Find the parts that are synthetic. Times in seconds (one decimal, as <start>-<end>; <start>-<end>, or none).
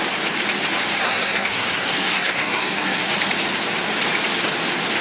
1.0-3.1